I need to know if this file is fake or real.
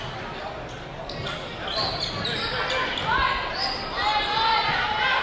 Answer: real